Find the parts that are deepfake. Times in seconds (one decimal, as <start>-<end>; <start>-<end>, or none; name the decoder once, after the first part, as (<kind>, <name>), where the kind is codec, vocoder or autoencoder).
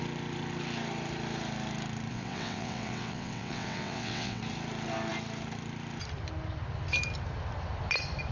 2.1-4.4 (vocoder, WaveNeXt)